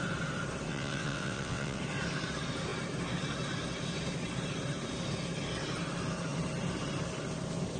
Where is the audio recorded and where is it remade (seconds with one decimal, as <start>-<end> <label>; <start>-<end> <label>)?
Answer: 0.0-0.7 recorded; 0.7-1.8 remade; 1.8-7.8 recorded